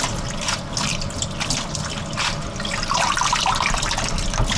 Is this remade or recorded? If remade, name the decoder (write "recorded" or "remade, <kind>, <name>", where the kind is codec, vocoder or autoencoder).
recorded